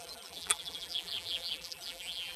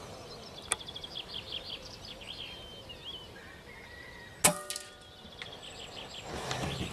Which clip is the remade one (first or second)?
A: first